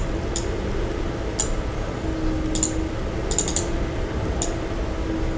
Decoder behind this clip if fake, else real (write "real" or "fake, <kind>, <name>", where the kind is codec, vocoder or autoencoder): real